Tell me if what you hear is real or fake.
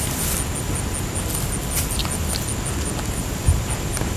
real